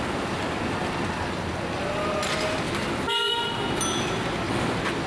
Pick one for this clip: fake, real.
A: real